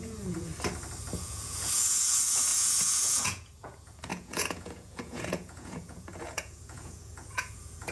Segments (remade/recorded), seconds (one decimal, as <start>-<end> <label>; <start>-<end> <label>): 0.0-0.5 remade; 0.5-1.2 recorded; 1.2-7.9 remade